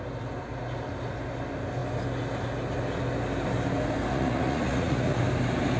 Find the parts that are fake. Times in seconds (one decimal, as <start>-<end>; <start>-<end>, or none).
4.1-5.2